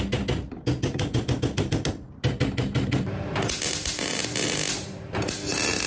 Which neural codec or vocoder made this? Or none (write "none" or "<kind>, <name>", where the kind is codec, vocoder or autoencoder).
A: none